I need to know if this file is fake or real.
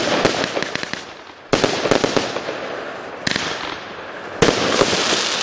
real